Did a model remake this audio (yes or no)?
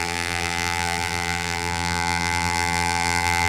yes